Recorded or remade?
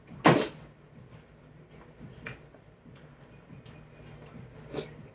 recorded